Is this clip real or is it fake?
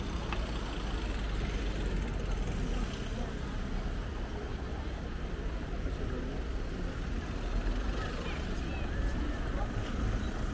real